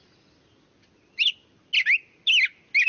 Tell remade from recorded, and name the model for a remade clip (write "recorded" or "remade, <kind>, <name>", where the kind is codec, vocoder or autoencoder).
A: recorded